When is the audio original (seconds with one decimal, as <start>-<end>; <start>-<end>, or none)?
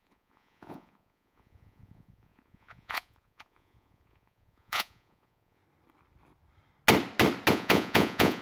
5.6-7.5